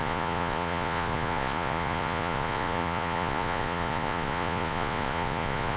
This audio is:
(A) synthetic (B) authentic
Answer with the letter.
A